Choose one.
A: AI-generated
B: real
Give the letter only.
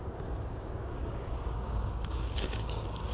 A